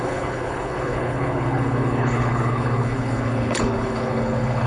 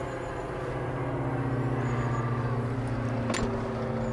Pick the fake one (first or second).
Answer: first